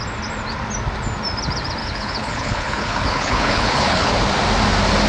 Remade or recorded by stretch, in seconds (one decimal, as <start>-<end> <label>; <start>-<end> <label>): 0.0-1.8 recorded; 1.8-4.1 remade; 4.1-5.1 recorded